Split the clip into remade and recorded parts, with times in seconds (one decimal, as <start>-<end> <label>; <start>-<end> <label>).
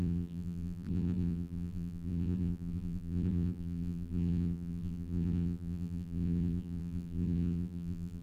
0.0-8.2 remade